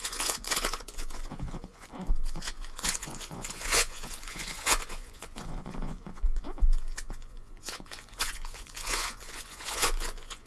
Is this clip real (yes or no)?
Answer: no